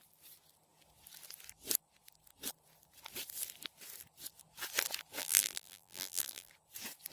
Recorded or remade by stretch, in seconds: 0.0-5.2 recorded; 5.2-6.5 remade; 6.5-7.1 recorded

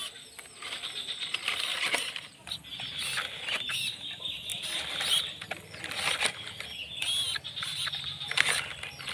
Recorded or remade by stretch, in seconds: 0.0-1.7 recorded; 1.7-2.6 remade; 2.6-4.5 recorded; 4.5-5.8 remade; 5.8-9.1 recorded